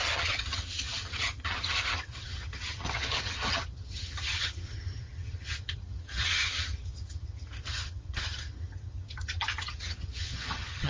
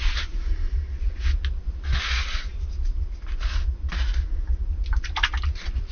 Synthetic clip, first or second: first